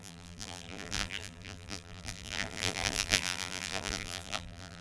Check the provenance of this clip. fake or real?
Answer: fake